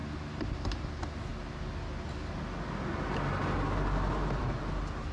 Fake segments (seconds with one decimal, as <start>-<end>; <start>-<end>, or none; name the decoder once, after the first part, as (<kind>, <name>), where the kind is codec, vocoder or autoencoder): none